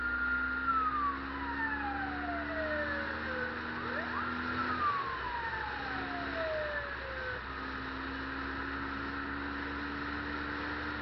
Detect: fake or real real